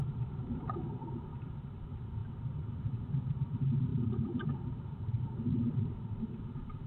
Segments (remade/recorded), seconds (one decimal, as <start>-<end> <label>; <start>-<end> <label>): 0.0-2.2 remade; 2.2-2.8 recorded; 2.8-6.9 remade